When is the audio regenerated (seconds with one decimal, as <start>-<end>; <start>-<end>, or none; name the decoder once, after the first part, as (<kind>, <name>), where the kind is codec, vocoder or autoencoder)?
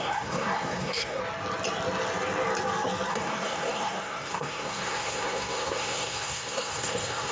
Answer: 0.0-1.2 (codec, SNAC); 3.1-7.3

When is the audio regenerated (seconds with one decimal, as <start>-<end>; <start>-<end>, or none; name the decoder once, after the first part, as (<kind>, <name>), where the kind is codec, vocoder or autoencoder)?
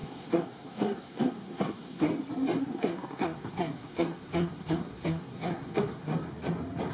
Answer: 0.0-2.1 (codec, SNAC); 2.6-6.1